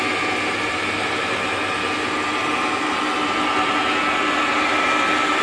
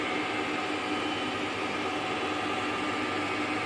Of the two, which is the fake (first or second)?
second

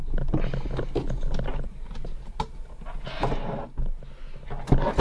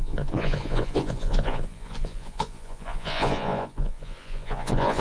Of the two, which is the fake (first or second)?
second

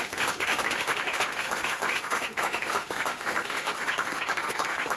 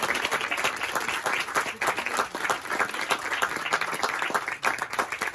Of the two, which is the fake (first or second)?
first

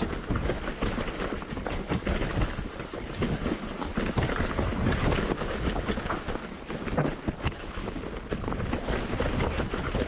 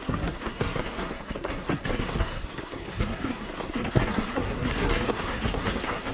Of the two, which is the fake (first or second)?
second